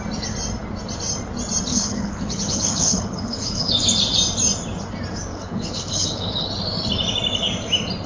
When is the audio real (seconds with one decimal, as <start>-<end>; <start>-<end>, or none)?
0.0-1.7; 3.8-5.3; 6.5-8.1